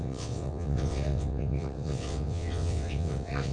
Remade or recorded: remade